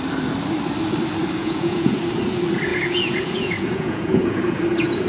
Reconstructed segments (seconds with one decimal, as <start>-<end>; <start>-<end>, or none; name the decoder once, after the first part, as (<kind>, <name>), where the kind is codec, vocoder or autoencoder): 1.4-2.0 (vocoder, Vocos); 2.7-4.6